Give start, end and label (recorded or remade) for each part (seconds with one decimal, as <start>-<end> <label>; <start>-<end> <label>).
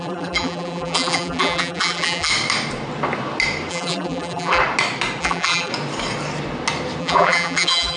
0.0-2.3 remade; 2.3-3.7 recorded; 3.7-4.6 remade; 4.6-5.2 recorded; 5.2-5.7 remade; 5.7-7.0 recorded; 7.0-8.0 remade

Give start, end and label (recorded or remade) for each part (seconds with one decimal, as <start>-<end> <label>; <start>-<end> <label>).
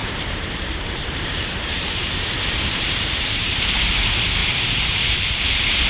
0.0-3.5 remade; 3.5-4.4 recorded; 4.4-5.9 remade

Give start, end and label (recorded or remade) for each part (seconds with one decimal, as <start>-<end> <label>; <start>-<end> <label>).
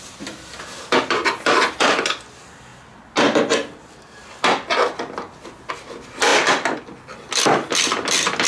0.0-8.5 recorded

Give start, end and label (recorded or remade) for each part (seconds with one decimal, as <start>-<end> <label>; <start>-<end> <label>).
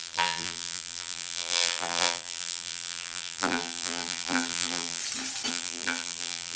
0.0-5.0 remade; 5.0-5.5 recorded; 5.5-6.6 remade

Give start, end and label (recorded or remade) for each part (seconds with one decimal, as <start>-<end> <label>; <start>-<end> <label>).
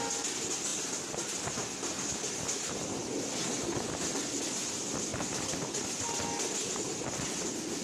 0.0-7.8 recorded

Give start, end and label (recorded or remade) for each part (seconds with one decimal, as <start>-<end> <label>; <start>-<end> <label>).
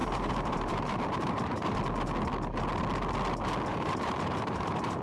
0.0-1.8 remade; 1.8-3.7 recorded; 3.7-5.0 remade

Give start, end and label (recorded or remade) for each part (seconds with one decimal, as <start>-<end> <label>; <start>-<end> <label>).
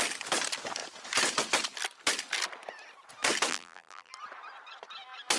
0.0-3.5 recorded; 3.5-4.1 remade; 4.1-5.4 recorded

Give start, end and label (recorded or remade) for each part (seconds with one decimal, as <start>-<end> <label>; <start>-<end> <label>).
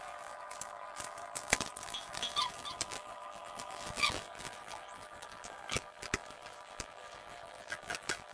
0.0-8.3 remade